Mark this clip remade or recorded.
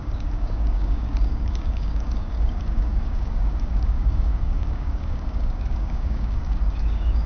remade